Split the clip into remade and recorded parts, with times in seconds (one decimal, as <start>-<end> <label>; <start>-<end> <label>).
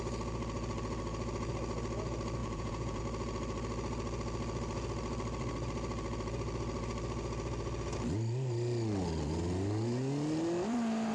0.0-2.4 recorded; 2.4-3.0 remade; 3.0-11.1 recorded